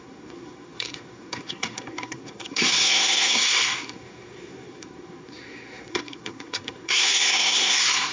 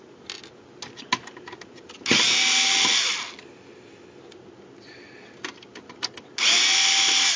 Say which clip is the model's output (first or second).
first